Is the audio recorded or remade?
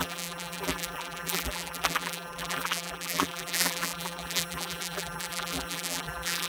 remade